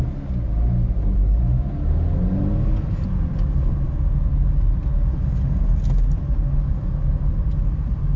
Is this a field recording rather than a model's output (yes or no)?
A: yes